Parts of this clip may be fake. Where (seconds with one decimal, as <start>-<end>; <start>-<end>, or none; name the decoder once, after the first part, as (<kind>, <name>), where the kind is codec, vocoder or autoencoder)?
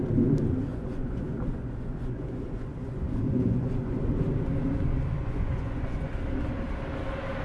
0.7-4.0 (vocoder, Vocos); 5.2-6.1